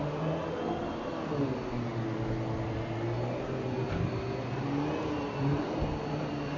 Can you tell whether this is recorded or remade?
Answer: recorded